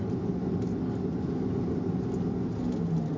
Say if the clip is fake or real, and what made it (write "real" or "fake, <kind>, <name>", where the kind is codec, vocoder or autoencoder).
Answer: real